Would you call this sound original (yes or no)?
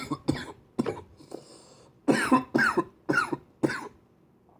yes